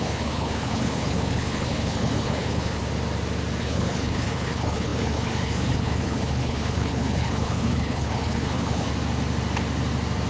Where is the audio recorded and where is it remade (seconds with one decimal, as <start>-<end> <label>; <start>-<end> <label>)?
0.0-2.8 remade; 2.8-3.6 recorded; 3.6-8.9 remade; 8.9-10.3 recorded